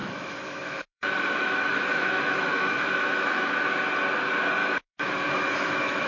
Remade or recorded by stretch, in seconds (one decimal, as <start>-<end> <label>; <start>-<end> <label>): 0.0-3.5 remade; 3.5-4.6 recorded; 4.6-6.1 remade